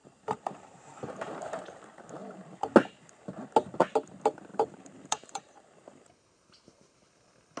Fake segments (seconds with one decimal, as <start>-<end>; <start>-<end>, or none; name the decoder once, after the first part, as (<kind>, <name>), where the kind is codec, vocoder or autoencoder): 0.0-1.3 (vocoder, BigVGAN v2); 4.5-7.1

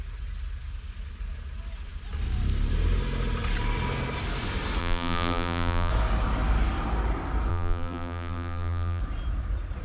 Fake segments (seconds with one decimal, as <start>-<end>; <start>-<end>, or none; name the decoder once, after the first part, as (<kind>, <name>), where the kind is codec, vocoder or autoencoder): 4.8-5.9 (vocoder, BigVGAN v2); 7.5-9.0

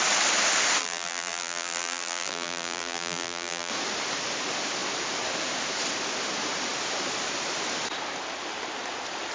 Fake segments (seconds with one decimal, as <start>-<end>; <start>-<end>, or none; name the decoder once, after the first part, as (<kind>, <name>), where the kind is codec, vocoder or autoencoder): 0.8-3.7 (vocoder, BigVGAN v2)

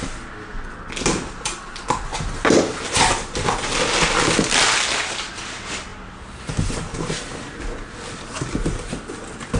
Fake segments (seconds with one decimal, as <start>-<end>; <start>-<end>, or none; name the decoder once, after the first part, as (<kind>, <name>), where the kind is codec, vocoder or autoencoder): 2.1-2.6 (vocoder, BigVGAN v2); 5.9-6.4

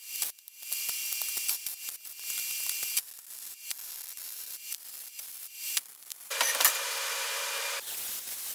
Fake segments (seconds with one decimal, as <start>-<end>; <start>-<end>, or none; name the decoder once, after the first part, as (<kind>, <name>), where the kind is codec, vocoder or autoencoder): 0.0-1.0 (vocoder, BigVGAN v2); 4.8-8.5